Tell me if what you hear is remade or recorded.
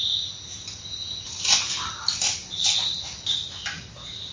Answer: recorded